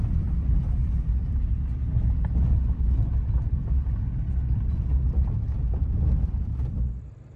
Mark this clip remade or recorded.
recorded